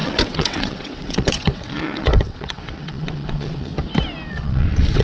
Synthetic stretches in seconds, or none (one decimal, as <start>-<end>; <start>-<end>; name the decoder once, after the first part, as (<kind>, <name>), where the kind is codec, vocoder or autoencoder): 0.0-3.7 (vocoder, WaveNeXt); 4.3-5.0